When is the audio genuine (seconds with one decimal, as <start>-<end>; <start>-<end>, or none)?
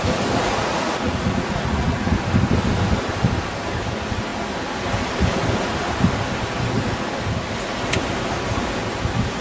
0.0-0.5; 2.2-9.4